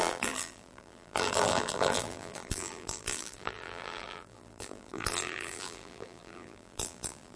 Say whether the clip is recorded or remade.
remade